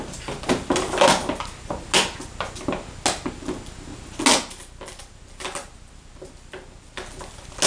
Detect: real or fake real